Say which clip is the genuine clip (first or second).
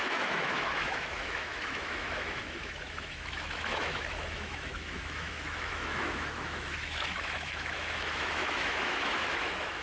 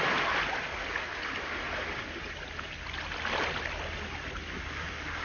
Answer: second